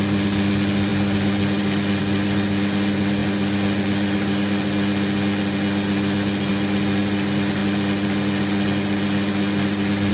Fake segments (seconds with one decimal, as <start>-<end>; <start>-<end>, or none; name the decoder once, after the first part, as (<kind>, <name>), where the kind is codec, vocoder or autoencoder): none